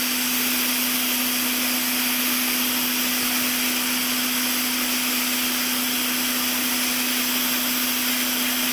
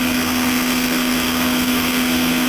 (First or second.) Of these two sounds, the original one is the first